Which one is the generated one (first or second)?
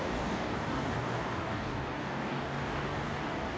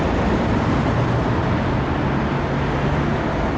first